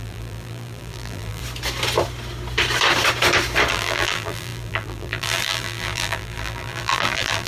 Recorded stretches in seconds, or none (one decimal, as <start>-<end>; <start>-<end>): 1.4-3.7